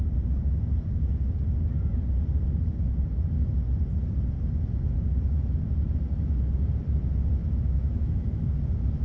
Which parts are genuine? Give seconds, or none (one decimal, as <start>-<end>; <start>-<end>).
0.0-7.4; 8.5-9.0

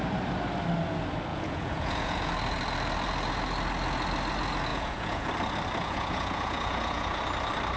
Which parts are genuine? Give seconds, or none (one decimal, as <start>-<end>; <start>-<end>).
0.0-1.3; 2.3-4.7; 5.3-5.8; 7.2-7.8